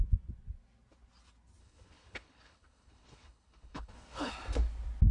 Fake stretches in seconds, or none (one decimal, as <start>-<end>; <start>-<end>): 1.6-4.3

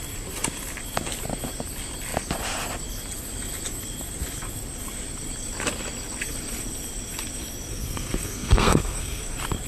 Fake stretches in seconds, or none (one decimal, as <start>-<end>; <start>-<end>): 7.7-9.2

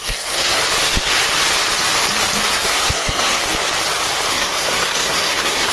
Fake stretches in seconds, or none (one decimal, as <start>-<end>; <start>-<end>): 0.0-0.6; 2.5-3.4; 4.3-5.7

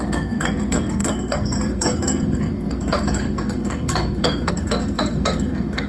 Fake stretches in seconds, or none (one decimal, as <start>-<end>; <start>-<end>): 0.0-5.9